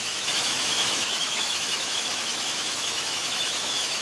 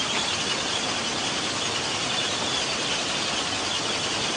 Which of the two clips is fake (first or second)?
first